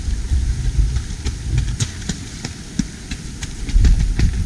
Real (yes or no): yes